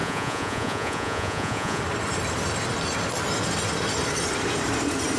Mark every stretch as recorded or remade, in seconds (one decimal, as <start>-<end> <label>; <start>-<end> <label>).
0.0-1.8 remade; 1.8-5.2 recorded